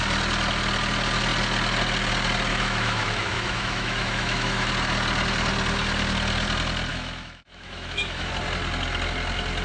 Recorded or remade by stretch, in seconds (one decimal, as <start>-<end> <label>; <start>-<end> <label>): 0.0-2.5 recorded; 2.5-4.7 remade; 4.7-6.9 recorded; 6.9-8.3 remade; 8.3-9.6 recorded